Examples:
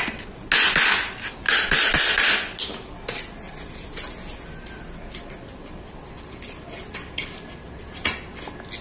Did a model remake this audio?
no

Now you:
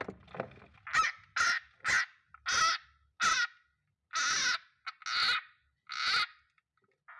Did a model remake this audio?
no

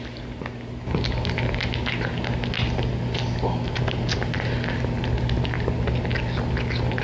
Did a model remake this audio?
no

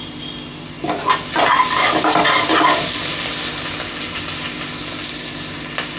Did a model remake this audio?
no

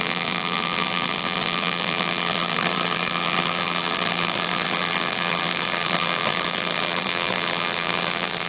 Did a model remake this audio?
yes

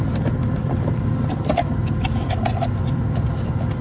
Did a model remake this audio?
yes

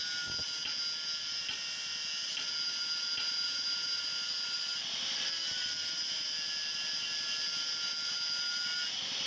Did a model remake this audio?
no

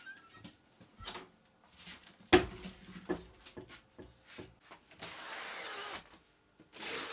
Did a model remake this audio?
no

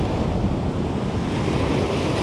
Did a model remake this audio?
no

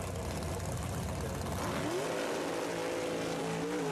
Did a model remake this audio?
no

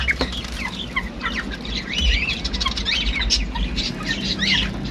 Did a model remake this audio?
yes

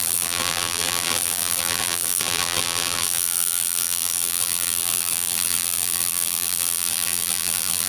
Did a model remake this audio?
yes